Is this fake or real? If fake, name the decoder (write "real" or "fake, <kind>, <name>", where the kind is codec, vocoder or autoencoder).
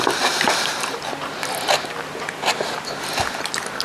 real